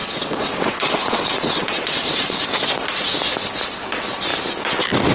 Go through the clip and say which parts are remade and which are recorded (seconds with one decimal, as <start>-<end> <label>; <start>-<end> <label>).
0.0-2.4 remade; 2.4-5.1 recorded